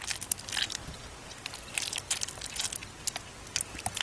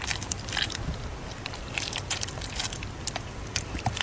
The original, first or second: first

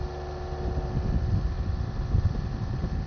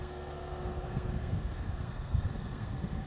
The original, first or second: first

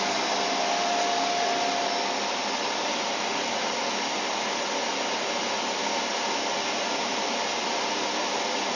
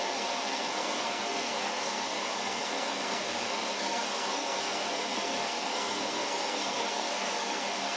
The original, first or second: first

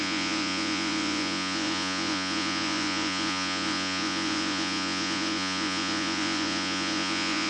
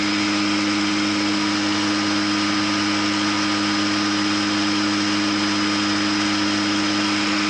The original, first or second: second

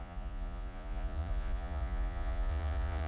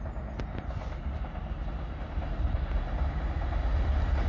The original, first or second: second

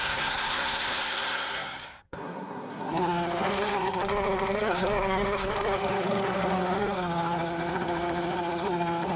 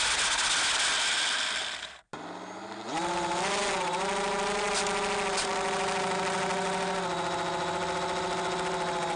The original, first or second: second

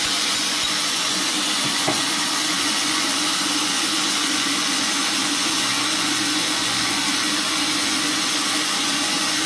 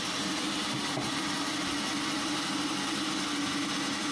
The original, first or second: second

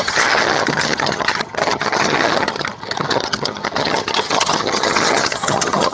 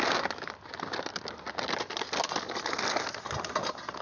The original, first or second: second